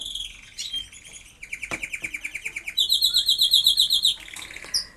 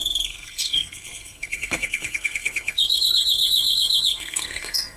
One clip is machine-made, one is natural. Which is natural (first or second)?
first